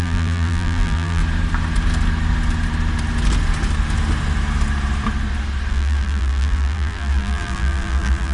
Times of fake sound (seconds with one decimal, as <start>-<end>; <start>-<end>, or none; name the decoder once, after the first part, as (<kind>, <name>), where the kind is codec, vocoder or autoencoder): 0.0-1.2 (vocoder, BigVGAN v2); 5.7-8.3